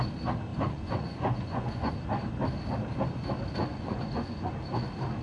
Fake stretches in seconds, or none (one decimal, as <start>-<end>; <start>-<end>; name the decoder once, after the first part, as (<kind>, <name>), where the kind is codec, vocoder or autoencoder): 0.5-1.9 (vocoder, Vocos); 3.6-4.5